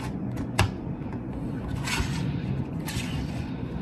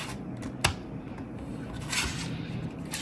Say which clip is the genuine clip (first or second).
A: second